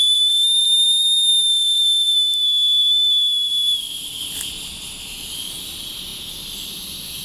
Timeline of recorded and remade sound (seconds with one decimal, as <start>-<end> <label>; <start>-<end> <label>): 0.0-7.2 recorded